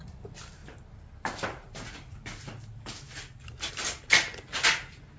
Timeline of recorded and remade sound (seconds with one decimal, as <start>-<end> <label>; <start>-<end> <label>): 0.0-5.2 recorded